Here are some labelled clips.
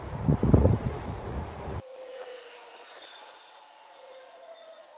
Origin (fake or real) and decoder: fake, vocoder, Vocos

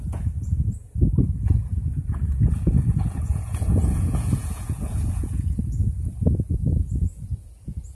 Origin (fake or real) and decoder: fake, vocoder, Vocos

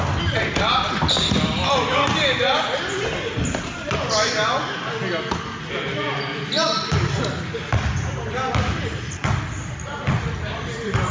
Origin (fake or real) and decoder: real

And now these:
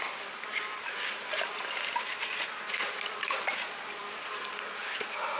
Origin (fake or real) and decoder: real